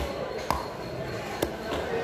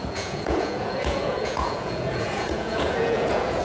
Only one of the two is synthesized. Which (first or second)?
second